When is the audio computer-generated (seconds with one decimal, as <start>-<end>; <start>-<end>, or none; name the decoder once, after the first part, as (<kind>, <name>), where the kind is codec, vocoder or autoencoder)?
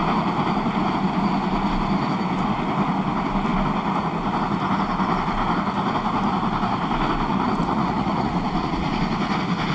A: 7.3-9.0 (vocoder, Vocos)